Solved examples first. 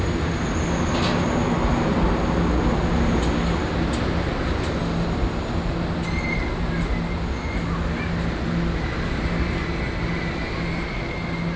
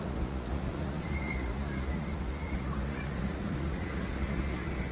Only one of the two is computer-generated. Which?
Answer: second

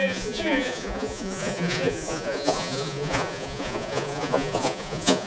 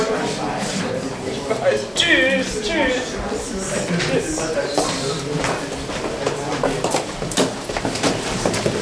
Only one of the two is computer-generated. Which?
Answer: first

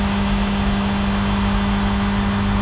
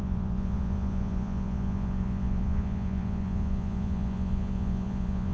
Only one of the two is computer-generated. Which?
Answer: second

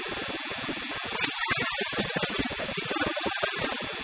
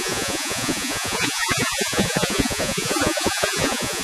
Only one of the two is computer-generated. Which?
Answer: second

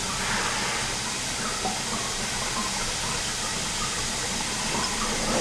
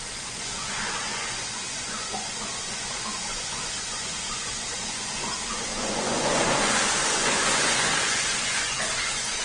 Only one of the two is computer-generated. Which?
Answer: second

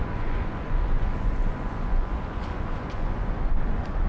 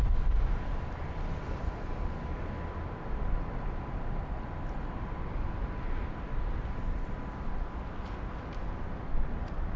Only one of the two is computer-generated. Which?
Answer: first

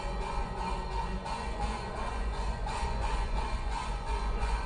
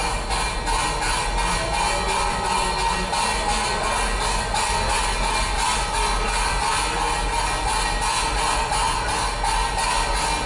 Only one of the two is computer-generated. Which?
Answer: first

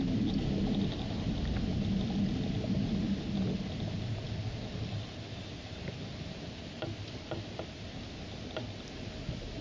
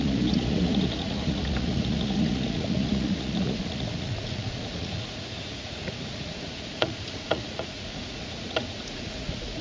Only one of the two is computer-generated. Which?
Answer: second